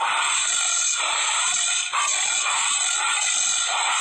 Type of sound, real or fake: real